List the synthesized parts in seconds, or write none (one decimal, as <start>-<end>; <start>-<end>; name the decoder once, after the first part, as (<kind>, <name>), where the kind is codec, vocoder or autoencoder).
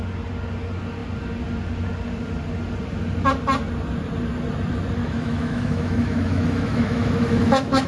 5.0-7.9 (autoencoder, DAC-VAE)